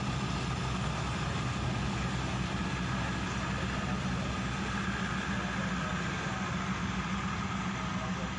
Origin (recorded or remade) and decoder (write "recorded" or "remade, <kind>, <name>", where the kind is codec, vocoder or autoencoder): recorded